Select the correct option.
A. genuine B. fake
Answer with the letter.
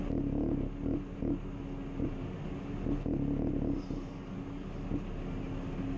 A